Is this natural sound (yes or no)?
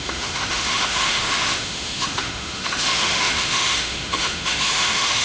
no